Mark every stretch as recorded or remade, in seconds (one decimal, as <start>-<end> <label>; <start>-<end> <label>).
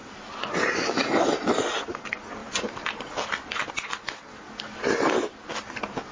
0.0-6.1 recorded